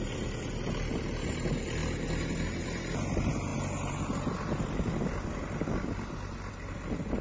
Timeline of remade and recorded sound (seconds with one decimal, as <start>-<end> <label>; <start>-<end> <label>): 0.0-7.2 recorded